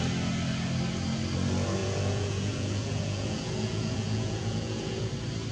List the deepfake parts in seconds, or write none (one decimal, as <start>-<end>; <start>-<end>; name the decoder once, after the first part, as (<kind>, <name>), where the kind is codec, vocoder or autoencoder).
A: 1.8-5.1 (vocoder, Vocos)